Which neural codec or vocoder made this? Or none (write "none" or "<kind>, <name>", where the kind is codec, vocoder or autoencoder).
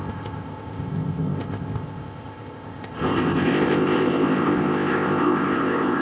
codec, ZipCodec